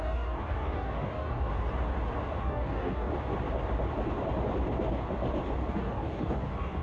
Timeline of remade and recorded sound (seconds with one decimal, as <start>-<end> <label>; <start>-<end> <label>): 0.0-1.5 remade; 1.5-2.4 recorded; 2.4-3.1 remade; 3.1-5.7 recorded; 5.7-6.8 remade